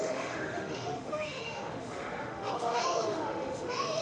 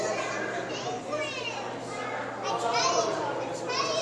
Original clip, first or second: second